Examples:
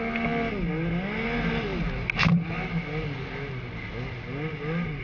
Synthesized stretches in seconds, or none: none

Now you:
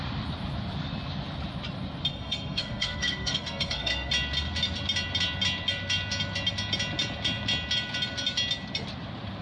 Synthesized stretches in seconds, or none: 2.1-4.1

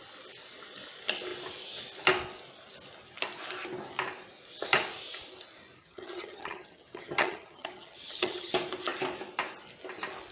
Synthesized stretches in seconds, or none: 5.8-8.5

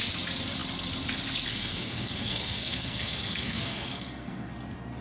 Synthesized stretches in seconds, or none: 1.5-4.5

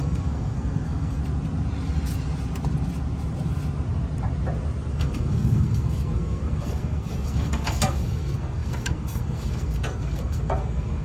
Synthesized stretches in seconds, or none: 0.0-1.2; 4.9-11.0

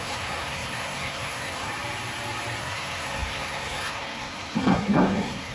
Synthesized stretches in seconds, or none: 0.0-1.7; 2.6-5.5

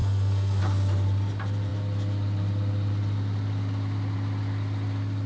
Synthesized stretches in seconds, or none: 0.0-0.6